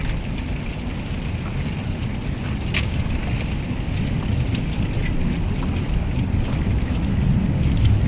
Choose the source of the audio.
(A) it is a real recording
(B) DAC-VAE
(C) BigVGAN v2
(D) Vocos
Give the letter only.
A